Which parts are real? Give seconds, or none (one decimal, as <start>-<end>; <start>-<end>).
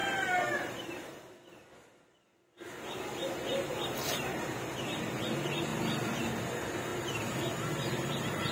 1.2-8.5